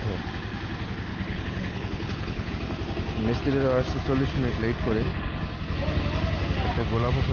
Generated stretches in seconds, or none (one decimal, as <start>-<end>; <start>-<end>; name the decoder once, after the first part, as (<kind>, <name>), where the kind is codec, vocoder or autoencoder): 1.1-2.5 (codec, HILCodec)